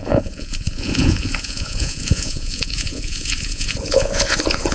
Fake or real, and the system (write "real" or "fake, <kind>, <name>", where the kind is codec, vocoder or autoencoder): fake, vocoder, Vocos